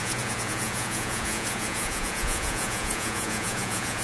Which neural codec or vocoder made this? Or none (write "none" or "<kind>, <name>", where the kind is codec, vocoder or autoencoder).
vocoder, Vocos